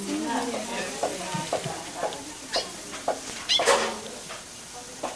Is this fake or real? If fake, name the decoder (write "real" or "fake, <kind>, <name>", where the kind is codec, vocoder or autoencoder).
real